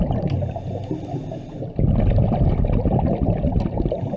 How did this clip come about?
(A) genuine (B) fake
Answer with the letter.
A